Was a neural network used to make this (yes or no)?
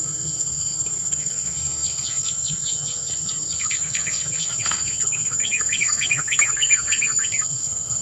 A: yes